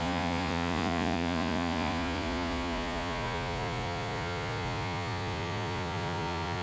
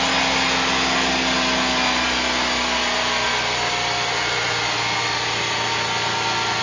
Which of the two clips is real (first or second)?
second